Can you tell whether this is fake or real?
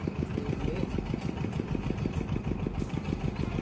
real